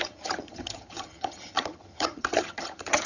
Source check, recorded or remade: remade